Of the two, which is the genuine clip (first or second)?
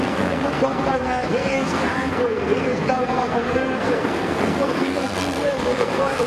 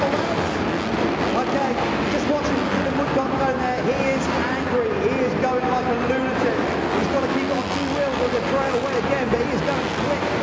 second